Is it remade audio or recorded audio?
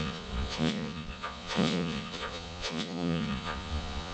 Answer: remade